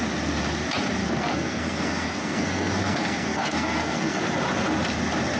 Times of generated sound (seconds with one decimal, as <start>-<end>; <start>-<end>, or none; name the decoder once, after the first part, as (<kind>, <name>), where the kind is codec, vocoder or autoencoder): 1.0-4.2 (codec, SNAC)